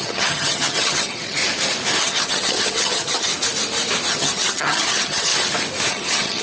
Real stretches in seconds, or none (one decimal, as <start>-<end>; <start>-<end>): 1.4-2.0; 3.3-4.1; 5.3-5.9